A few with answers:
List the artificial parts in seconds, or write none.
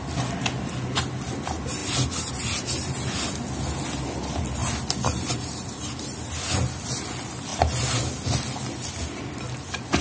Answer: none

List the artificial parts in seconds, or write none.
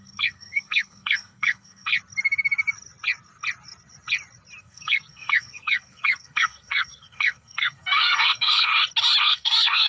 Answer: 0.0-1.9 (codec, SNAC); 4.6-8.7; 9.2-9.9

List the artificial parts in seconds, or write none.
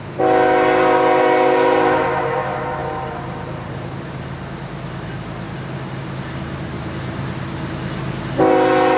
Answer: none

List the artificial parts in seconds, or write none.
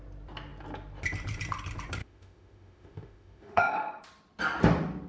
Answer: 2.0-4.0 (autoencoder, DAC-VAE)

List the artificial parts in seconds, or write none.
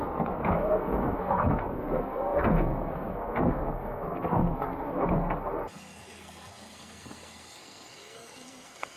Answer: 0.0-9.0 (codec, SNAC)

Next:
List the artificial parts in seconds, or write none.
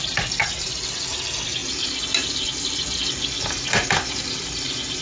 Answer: none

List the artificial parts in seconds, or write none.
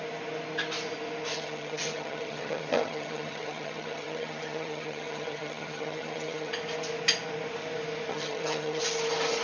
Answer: 1.3-6.5 (vocoder, HiFi-GAN); 8.1-8.8